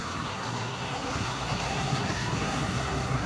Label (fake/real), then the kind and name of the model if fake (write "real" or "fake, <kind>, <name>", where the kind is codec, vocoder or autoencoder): fake, codec, SNAC